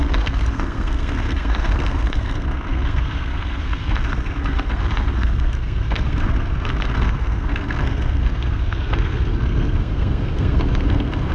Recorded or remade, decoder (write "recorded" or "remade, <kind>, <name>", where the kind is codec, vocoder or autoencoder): remade, codec, SNAC